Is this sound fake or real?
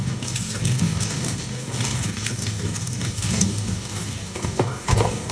fake